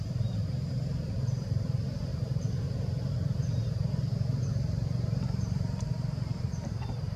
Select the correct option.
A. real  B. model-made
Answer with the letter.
B